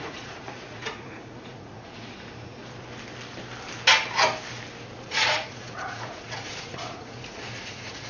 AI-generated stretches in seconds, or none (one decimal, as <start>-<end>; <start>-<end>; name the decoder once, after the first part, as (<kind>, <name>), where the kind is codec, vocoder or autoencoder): 0.0-2.6 (vocoder, Vocos); 5.1-8.1